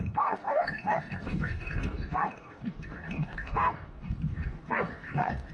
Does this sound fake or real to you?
fake